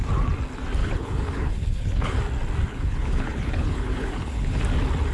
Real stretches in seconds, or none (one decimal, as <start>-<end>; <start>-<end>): 0.0-0.8; 2.2-2.7; 4.6-5.1